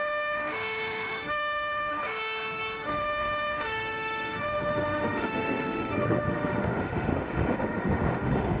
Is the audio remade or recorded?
remade